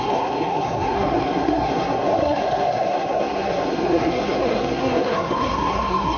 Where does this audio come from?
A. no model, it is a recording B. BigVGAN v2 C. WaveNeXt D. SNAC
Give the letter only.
D